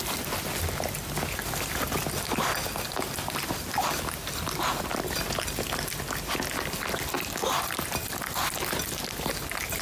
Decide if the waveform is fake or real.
real